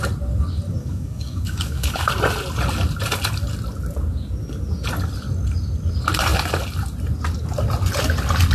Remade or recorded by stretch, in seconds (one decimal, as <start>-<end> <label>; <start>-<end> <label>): 0.0-0.8 recorded; 0.8-2.1 remade; 2.1-8.5 recorded